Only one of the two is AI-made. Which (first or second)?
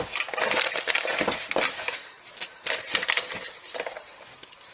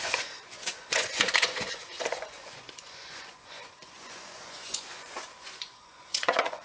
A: second